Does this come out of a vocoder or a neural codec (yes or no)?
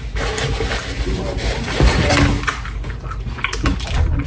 no